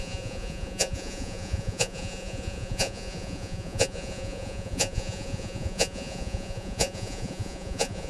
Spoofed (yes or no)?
yes